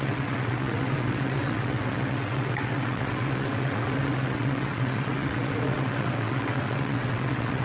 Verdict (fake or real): fake